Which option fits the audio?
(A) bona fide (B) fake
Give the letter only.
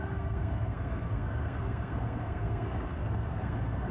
B